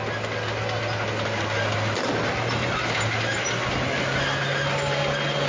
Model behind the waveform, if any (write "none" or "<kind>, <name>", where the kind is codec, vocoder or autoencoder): none